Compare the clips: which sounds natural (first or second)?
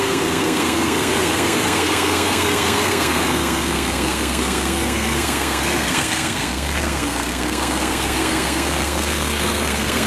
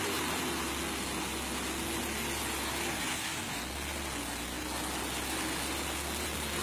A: second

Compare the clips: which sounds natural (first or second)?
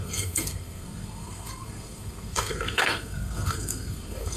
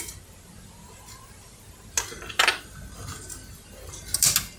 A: second